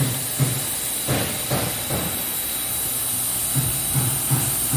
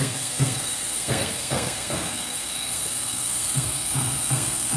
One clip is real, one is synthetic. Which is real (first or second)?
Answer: first